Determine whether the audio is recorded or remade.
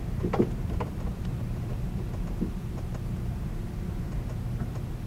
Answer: remade